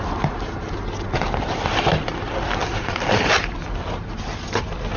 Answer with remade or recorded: recorded